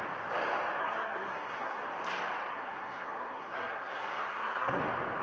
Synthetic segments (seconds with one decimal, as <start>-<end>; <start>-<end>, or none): 0.8-1.8; 2.5-4.8